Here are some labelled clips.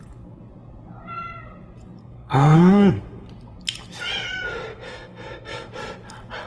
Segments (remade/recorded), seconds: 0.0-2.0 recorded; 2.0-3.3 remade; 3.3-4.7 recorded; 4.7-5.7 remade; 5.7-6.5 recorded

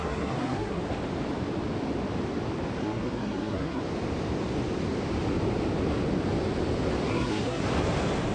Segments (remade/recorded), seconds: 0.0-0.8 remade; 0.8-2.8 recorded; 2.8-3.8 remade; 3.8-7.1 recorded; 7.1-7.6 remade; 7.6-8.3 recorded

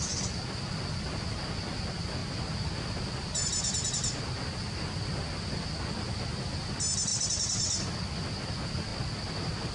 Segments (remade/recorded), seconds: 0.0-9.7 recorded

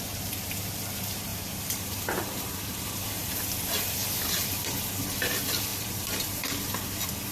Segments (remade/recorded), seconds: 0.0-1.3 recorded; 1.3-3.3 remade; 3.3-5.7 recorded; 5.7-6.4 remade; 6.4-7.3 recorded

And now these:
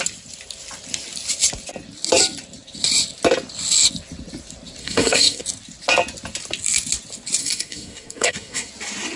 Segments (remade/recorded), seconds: 0.0-4.8 recorded; 4.8-5.4 remade; 5.4-7.4 recorded; 7.4-8.7 remade; 8.7-9.2 recorded

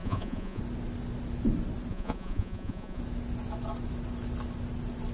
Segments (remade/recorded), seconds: 0.0-0.6 remade; 0.6-1.9 recorded; 1.9-3.0 remade; 3.0-5.1 recorded